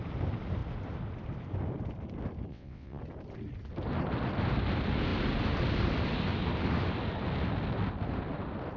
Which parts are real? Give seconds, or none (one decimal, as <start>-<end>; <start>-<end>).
0.0-2.5; 3.0-8.8

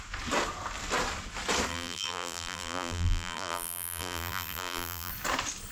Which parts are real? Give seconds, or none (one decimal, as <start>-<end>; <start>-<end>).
0.0-1.7; 5.1-5.7

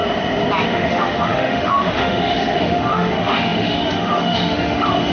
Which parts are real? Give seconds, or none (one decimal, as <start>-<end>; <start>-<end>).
0.0-0.7